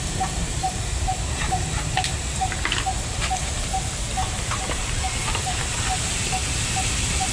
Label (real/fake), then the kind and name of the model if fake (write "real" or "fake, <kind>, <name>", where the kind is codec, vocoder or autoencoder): fake, vocoder, BigVGAN v2